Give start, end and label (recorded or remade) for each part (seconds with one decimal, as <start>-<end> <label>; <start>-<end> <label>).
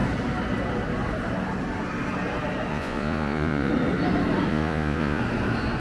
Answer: 0.0-2.7 recorded; 2.7-3.7 remade; 3.7-4.5 recorded; 4.5-5.2 remade; 5.2-5.8 recorded